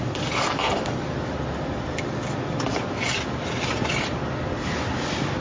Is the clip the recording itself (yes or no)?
yes